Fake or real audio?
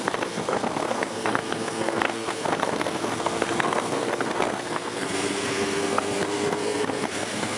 fake